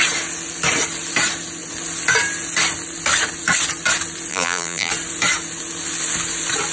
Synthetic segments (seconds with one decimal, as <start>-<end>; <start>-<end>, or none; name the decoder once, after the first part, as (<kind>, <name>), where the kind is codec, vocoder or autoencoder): 4.3-4.9 (vocoder, BigVGAN v2)